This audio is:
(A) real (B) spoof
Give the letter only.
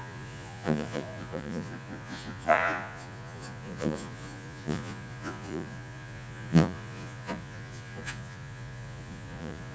B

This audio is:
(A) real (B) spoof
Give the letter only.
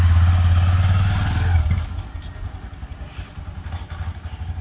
A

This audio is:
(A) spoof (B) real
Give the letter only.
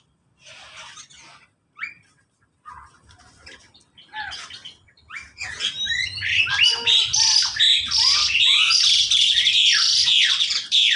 A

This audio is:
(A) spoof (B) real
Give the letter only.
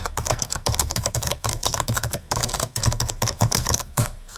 A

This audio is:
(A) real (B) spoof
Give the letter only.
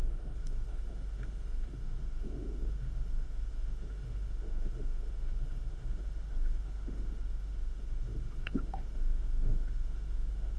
B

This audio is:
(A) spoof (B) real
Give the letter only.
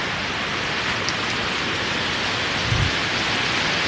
B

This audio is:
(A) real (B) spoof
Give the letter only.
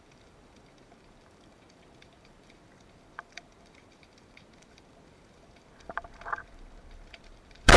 B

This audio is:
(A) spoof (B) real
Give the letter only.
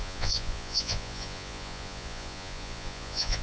A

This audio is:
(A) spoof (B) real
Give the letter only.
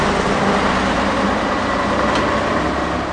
B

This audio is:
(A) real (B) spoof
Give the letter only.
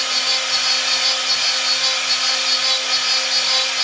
A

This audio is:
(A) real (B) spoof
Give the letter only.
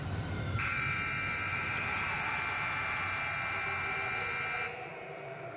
B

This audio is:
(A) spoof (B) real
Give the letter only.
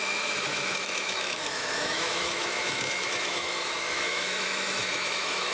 A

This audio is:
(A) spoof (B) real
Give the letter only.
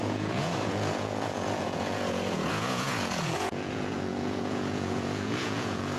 A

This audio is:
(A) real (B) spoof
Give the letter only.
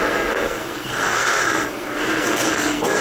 B